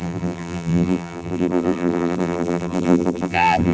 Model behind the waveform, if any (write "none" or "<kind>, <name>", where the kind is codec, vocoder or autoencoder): vocoder, BigVGAN v2